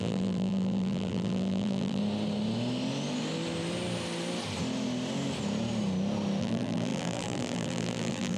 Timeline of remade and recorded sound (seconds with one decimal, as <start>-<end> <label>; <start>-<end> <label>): 0.0-2.0 remade; 2.0-6.4 recorded; 6.4-8.4 remade